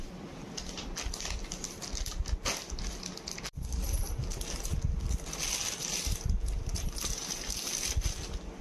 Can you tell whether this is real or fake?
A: real